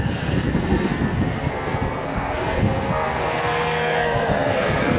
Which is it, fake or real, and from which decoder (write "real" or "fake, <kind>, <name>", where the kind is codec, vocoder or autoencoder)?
fake, codec, SNAC